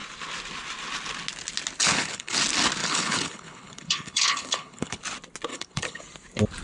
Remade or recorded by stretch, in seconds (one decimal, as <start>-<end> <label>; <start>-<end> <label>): 0.0-1.8 recorded; 1.8-2.4 remade; 2.4-2.8 recorded; 2.8-5.0 remade; 5.0-5.5 recorded; 5.5-6.0 remade; 6.0-6.6 recorded